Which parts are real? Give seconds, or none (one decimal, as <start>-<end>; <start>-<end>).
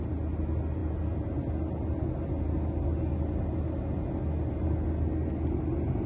0.0-6.1